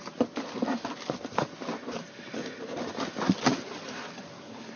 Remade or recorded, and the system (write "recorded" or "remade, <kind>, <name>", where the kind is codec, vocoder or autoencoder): recorded